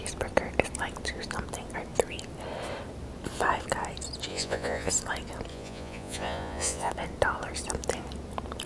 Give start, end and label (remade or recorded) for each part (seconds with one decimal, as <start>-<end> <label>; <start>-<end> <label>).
0.0-4.3 recorded; 4.3-4.9 remade; 4.9-5.5 recorded; 5.5-6.9 remade; 6.9-8.7 recorded